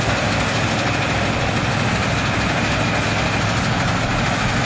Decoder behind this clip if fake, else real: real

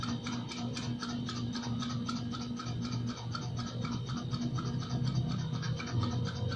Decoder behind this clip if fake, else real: real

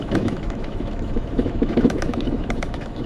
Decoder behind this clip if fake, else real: fake, autoencoder, DAC-VAE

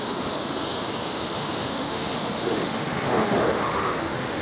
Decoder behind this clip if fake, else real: fake, autoencoder, DAC-VAE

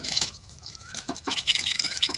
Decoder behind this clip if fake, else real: fake, autoencoder, DAC-VAE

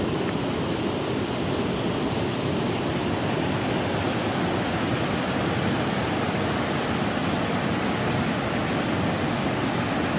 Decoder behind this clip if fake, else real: real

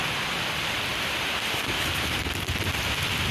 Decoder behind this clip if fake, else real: real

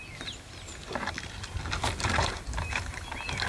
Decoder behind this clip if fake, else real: real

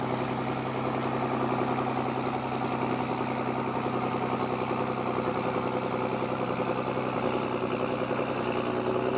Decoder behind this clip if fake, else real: real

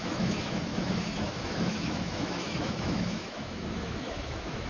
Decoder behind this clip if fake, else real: fake, autoencoder, DAC-VAE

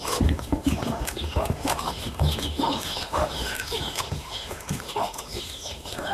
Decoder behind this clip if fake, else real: fake, autoencoder, DAC-VAE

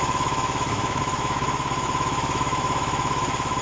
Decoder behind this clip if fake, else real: fake, autoencoder, DAC-VAE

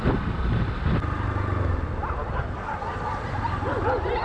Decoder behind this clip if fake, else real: real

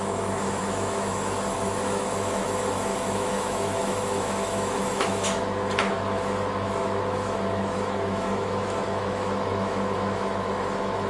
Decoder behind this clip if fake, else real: fake, autoencoder, DAC-VAE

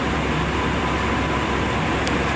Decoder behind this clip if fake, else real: real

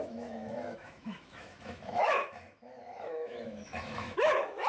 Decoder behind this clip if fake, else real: fake, autoencoder, DAC-VAE